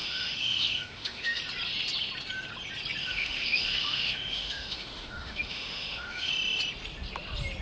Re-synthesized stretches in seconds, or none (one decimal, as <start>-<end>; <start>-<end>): 0.0-1.4; 3.0-6.3